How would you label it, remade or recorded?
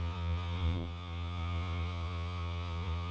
remade